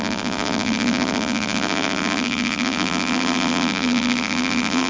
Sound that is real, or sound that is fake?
fake